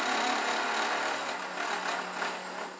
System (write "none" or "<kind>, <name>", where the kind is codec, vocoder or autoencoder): none